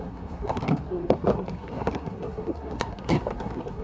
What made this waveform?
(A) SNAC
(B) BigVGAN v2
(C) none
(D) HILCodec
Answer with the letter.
A